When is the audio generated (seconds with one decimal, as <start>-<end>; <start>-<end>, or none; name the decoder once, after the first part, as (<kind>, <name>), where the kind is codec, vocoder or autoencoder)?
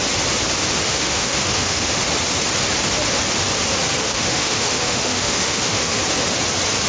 0.9-1.9 (autoencoder, DAC-VAE); 4.0-6.0